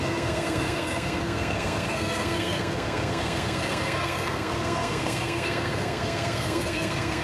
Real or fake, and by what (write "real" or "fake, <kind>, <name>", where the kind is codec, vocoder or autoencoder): fake, codec, SNAC